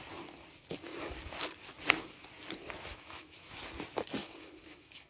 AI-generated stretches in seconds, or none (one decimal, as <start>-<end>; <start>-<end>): 2.9-3.6; 4.2-5.1